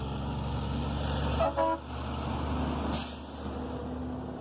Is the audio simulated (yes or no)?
no